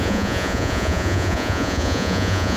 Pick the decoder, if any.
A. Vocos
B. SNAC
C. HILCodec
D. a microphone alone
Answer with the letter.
A